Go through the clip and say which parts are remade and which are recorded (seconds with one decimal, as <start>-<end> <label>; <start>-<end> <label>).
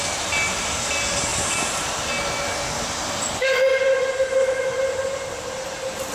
0.0-1.3 recorded; 1.3-2.1 remade; 2.1-3.7 recorded; 3.7-6.1 remade